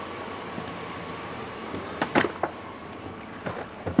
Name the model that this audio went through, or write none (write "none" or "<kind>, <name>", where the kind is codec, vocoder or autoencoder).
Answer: vocoder, BigVGAN v2